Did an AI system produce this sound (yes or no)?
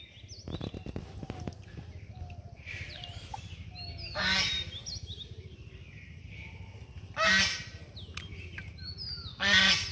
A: no